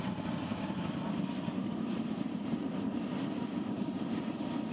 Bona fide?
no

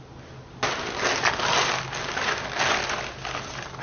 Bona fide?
yes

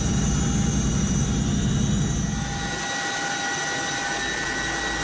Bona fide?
yes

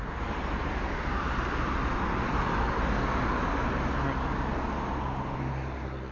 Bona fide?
yes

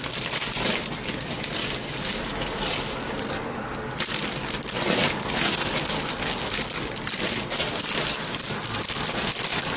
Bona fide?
yes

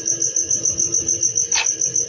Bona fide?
yes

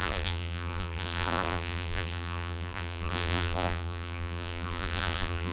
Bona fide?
no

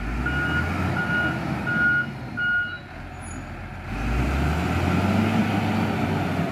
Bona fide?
yes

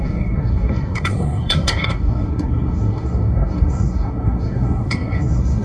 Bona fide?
no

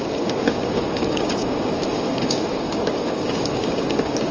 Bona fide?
no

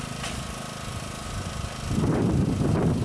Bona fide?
yes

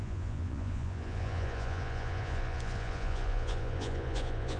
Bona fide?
no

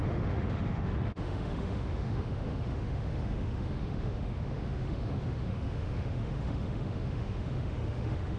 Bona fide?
no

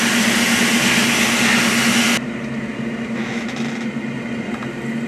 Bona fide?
yes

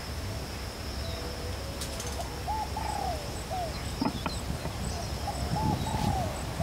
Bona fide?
yes